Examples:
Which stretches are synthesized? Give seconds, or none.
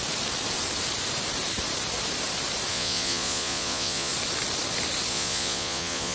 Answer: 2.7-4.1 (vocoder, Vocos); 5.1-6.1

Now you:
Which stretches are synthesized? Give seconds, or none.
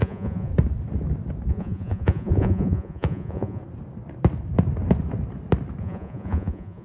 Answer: 0.0-0.5 (vocoder, Vocos); 1.5-3.6; 5.8-6.8